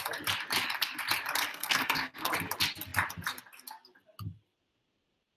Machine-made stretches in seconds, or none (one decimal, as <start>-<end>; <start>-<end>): 1.5-2.3